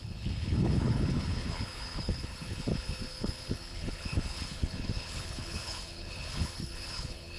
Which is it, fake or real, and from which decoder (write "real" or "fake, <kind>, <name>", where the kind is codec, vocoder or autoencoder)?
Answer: fake, codec, HILCodec